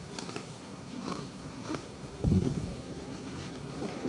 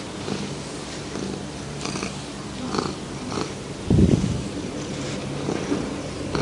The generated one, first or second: first